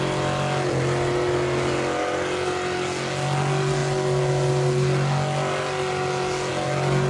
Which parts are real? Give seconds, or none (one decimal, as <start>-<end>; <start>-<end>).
0.0-7.1